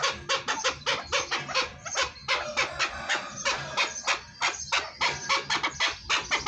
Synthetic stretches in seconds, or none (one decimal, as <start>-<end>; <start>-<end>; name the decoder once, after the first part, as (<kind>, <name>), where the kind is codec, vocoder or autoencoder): none